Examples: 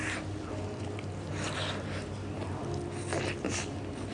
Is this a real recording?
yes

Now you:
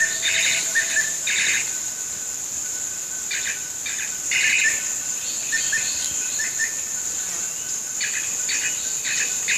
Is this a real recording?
yes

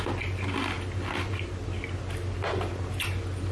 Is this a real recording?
yes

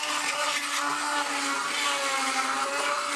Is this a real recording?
yes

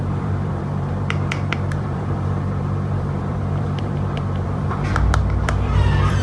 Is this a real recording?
no